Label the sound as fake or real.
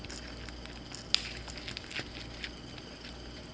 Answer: real